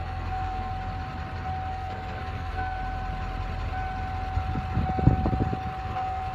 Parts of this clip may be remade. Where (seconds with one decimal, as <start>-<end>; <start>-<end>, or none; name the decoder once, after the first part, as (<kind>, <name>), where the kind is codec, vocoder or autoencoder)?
0.0-0.7 (codec, SNAC); 1.7-2.8; 5.8-6.3